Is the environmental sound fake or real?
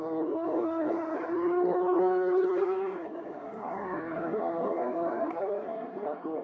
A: fake